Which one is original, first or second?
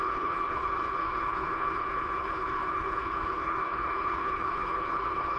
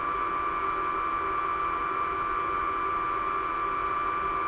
second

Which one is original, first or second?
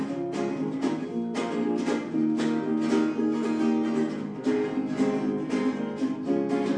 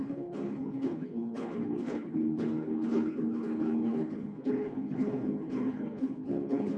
first